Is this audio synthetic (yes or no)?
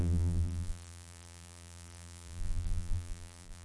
yes